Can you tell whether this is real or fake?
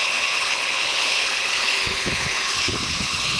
fake